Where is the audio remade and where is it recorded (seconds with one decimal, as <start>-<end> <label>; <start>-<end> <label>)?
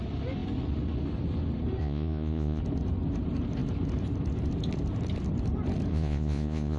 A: 0.0-1.8 recorded; 1.8-2.6 remade; 2.6-5.9 recorded; 5.9-6.8 remade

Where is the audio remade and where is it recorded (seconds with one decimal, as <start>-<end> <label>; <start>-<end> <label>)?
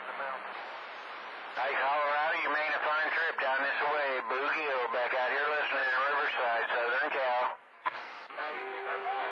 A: 0.0-7.5 recorded; 7.5-9.3 remade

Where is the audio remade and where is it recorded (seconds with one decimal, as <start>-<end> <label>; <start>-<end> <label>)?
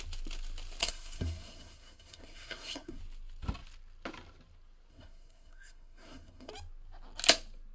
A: 0.0-0.8 recorded; 0.8-3.0 remade; 3.0-4.9 recorded; 4.9-6.5 remade; 6.5-7.7 recorded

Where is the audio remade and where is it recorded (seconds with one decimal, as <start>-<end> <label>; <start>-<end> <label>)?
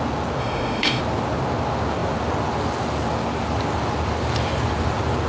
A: 0.0-0.4 recorded; 0.4-1.0 remade; 1.0-5.3 recorded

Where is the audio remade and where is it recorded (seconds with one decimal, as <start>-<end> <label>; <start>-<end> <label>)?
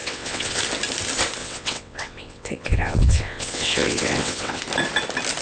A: 0.0-0.6 remade; 0.6-1.4 recorded; 1.4-4.6 remade; 4.6-5.4 recorded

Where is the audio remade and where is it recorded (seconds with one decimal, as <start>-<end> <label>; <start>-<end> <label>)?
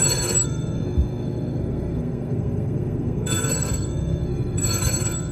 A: 0.0-5.3 remade